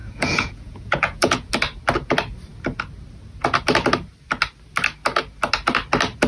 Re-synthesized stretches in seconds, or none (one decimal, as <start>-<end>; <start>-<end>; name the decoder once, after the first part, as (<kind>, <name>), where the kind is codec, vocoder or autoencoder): 0.0-1.5 (vocoder, Vocos)